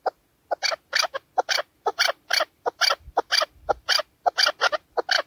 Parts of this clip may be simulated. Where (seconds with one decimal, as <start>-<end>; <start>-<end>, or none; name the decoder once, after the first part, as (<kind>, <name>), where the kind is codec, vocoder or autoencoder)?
1.9-4.0 (vocoder, BigVGAN v2)